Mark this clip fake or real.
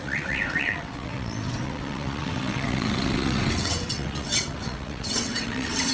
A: fake